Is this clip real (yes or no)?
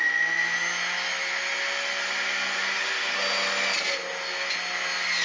yes